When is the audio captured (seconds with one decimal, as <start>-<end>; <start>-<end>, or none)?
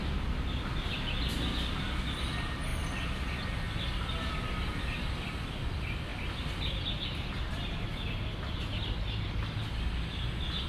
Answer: 0.0-10.7